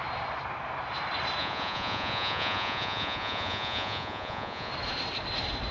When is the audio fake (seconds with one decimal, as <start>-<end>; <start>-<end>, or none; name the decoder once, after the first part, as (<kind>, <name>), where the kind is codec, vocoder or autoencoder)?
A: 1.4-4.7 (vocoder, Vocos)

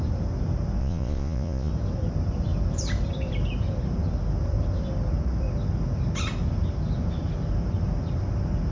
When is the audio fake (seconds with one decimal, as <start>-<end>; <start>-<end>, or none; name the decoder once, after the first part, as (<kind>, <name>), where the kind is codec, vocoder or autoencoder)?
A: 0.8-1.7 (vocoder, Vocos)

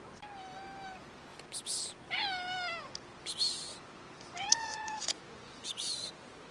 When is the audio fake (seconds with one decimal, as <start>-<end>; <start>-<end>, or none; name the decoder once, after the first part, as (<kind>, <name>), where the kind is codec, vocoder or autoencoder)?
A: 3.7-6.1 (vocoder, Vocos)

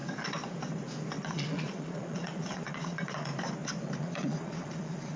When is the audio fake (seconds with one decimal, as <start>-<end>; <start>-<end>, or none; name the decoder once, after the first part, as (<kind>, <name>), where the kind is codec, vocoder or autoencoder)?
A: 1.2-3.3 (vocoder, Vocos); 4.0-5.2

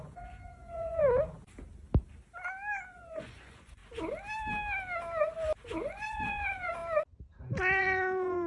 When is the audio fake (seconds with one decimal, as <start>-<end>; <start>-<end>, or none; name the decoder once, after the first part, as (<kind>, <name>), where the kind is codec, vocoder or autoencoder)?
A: 0.0-1.0 (vocoder, Vocos); 2.9-3.8; 5.6-6.8; 7.8-8.5

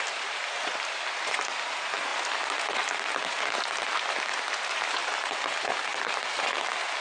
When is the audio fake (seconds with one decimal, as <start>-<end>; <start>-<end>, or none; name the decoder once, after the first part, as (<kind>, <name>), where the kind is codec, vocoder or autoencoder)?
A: none

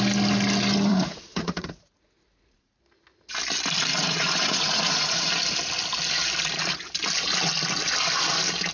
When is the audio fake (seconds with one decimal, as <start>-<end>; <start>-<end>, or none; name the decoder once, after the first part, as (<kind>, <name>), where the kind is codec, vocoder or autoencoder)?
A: 0.9-2.8 (vocoder, Vocos); 3.9-5.3